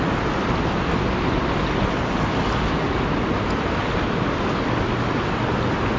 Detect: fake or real real